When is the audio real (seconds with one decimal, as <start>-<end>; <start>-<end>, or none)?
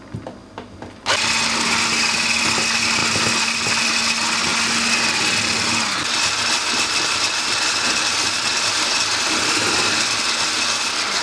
0.0-11.2